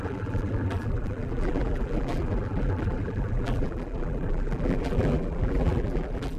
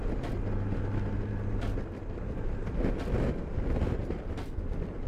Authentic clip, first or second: second